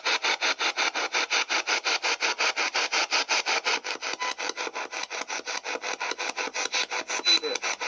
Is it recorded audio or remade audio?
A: recorded